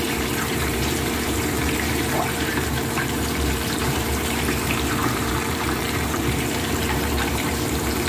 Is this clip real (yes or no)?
no